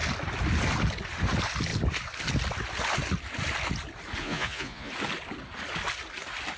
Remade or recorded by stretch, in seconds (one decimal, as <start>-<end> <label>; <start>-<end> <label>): 0.0-4.2 recorded; 4.2-4.9 remade; 4.9-6.6 recorded